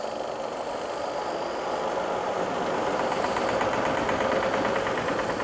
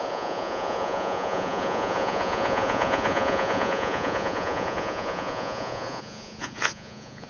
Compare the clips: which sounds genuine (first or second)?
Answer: first